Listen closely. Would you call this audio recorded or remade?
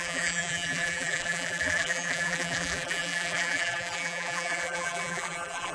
remade